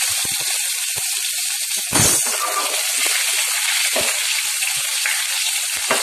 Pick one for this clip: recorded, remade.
recorded